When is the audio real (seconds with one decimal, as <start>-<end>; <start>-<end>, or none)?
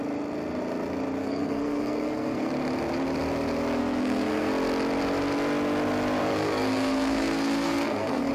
0.0-1.2; 2.5-3.8; 4.5-6.2